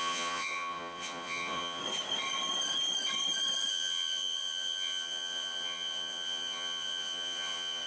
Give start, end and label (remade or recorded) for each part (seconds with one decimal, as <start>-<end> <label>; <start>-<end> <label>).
0.0-1.8 remade; 1.8-3.7 recorded; 3.7-7.9 remade